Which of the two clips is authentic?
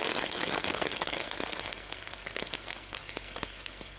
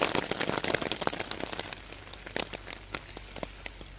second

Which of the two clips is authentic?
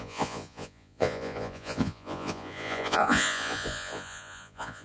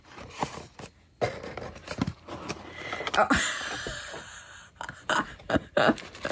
second